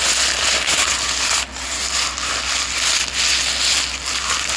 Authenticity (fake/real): real